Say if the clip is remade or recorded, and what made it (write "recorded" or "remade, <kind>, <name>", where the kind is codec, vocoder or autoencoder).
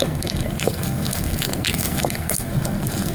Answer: remade, codec, SNAC